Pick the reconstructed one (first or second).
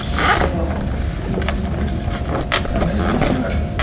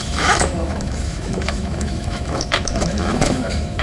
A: second